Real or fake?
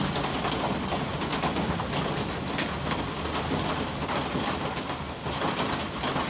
real